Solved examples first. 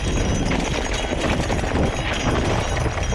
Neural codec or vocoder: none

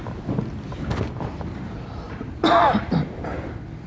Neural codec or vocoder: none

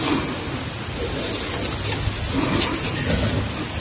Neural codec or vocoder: none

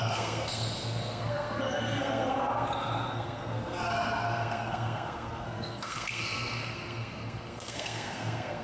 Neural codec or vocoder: codec, SNAC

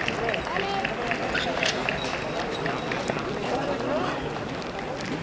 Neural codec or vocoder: none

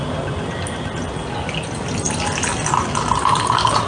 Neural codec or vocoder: none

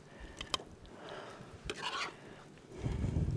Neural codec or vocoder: none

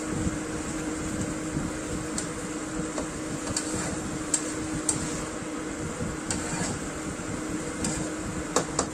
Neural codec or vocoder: none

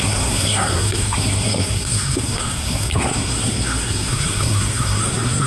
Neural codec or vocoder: codec, SNAC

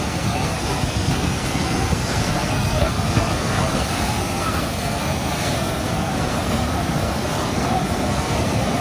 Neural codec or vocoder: codec, SNAC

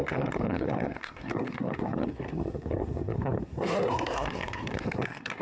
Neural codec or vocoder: codec, SNAC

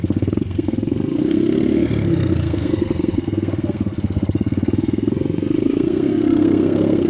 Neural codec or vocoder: codec, SNAC